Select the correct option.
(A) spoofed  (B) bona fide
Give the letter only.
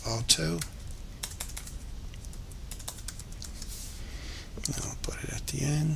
B